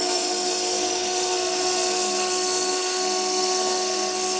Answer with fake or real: fake